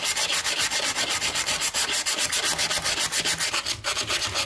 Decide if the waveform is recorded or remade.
recorded